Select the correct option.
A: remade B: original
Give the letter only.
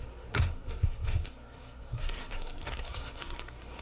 A